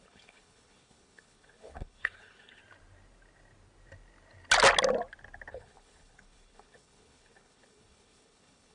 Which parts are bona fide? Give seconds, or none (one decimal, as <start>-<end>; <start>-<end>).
2.6-5.5